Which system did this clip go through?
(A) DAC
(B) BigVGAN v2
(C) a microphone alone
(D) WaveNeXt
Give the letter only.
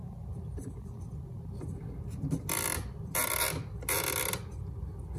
B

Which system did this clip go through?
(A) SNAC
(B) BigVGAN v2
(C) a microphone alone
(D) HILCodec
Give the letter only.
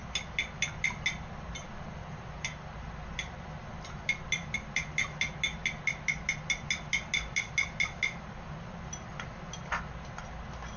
C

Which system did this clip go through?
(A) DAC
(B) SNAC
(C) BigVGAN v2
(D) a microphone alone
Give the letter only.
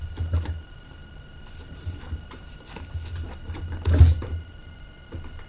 D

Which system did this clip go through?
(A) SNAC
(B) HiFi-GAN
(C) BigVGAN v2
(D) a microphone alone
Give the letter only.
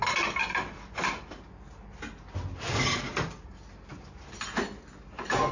D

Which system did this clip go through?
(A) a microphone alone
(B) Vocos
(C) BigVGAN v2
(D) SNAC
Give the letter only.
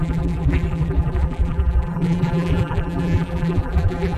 C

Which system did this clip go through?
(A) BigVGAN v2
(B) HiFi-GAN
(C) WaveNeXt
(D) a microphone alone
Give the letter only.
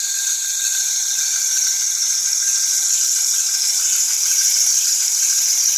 A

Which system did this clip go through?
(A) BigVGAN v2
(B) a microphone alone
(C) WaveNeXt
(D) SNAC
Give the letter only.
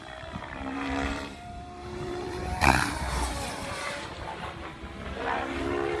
A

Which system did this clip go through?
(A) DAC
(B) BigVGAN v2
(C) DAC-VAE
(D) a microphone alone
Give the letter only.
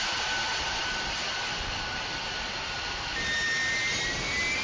D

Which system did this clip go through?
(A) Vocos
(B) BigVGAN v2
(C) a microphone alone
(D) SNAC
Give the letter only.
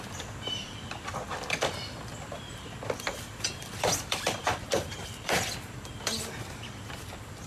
B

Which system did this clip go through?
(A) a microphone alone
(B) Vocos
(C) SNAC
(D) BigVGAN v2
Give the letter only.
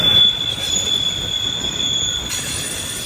D